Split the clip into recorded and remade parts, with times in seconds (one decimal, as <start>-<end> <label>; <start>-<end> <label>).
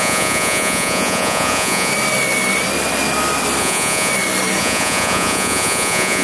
0.0-1.9 remade; 1.9-3.6 recorded; 3.6-4.1 remade; 4.1-4.6 recorded; 4.6-6.2 remade